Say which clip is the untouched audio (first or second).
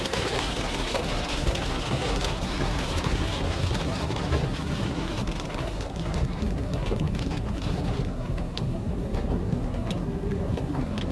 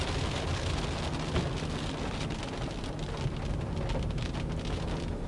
second